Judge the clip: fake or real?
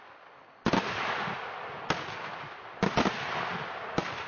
real